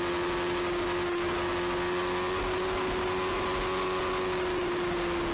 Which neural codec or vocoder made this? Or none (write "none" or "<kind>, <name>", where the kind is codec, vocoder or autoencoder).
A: none